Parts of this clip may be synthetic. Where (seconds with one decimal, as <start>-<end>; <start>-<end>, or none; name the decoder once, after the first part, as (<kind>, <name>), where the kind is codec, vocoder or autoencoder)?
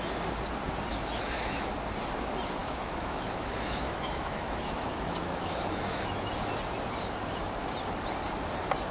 0.9-1.7 (autoencoder, DAC-VAE); 2.6-6.3